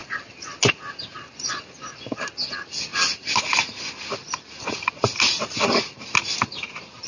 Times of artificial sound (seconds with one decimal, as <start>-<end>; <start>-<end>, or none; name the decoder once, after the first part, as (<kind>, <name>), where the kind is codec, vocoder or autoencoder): none